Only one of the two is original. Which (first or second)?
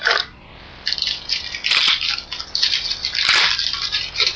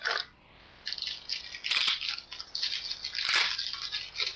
second